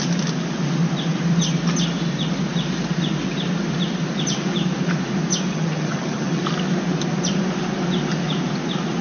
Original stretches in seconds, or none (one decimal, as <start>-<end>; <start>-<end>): 0.0-5.5; 6.4-9.0